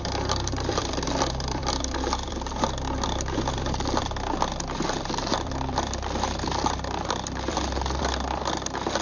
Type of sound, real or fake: fake